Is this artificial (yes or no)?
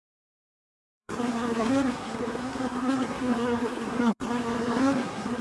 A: yes